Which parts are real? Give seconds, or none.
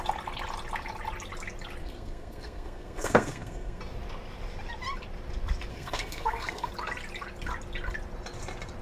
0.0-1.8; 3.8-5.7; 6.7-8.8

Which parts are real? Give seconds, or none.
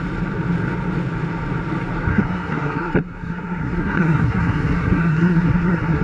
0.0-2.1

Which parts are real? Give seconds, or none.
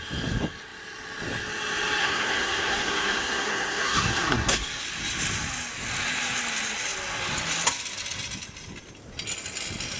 0.0-2.0; 4.8-10.0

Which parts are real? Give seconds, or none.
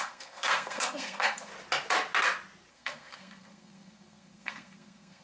1.5-2.7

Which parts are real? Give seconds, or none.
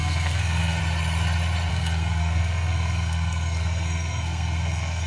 0.8-1.7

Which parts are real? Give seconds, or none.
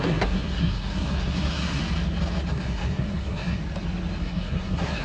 1.8-2.5; 3.6-4.2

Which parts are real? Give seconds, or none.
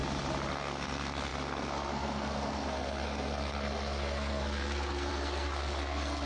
0.0-0.5